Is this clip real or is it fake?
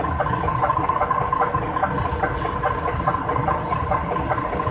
real